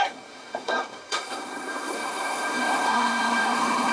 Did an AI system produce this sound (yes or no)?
yes